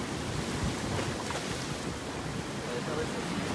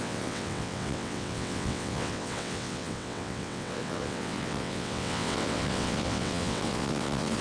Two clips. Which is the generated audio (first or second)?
second